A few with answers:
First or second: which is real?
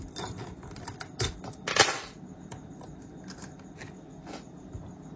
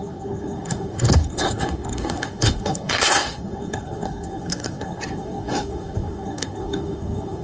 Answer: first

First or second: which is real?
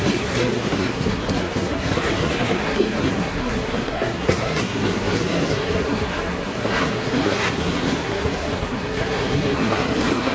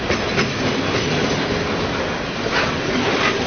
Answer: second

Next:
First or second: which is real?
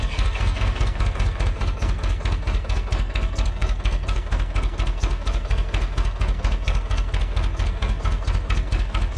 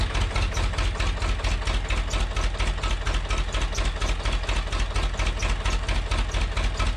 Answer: second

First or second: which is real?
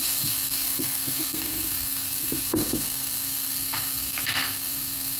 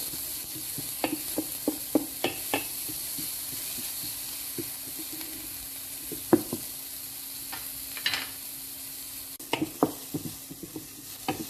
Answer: second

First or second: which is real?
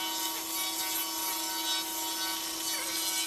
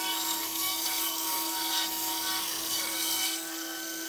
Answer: first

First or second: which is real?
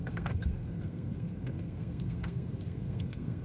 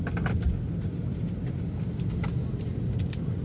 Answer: second